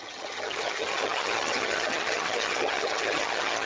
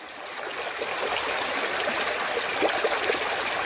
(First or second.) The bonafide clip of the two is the second